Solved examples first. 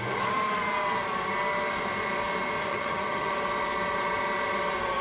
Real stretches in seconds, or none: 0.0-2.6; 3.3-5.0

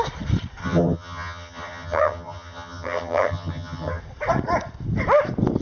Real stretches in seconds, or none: 0.0-0.6; 4.0-5.6

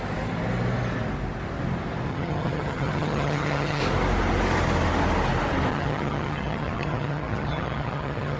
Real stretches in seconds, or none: 0.0-2.1; 3.8-5.7